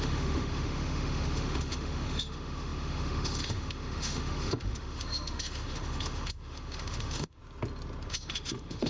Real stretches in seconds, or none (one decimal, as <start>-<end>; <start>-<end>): 7.4-8.1